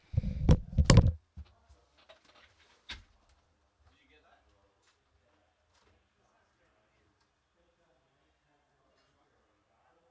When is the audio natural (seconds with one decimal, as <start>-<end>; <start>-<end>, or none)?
0.0-10.1